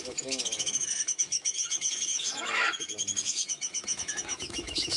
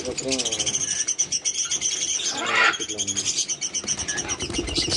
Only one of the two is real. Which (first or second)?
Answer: second